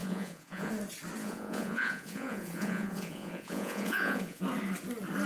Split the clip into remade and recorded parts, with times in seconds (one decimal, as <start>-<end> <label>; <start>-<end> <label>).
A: 0.0-0.7 remade; 0.7-1.2 recorded; 1.2-4.4 remade; 4.4-5.3 recorded